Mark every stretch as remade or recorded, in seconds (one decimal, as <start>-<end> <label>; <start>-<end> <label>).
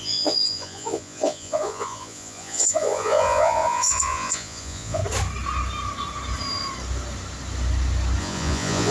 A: 0.0-5.0 remade; 5.0-8.2 recorded; 8.2-8.9 remade